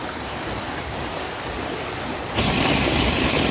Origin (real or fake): real